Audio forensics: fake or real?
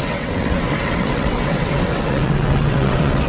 fake